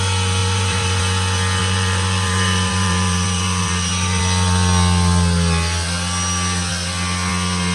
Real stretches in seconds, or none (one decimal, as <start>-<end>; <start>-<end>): 0.0-0.4; 1.0-1.6; 4.2-7.7